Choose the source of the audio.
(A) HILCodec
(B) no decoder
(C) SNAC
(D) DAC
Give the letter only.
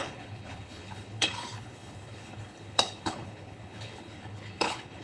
A